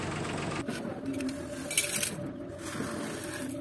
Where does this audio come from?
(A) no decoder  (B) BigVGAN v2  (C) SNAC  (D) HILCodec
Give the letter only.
A